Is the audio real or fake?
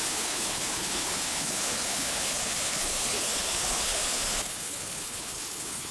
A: fake